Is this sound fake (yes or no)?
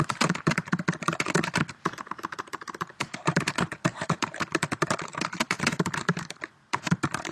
yes